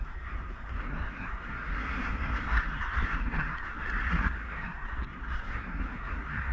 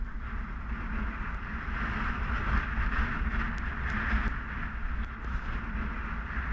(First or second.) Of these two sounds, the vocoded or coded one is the first